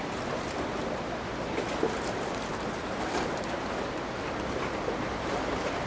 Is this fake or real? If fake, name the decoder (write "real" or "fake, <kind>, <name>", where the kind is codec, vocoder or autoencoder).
real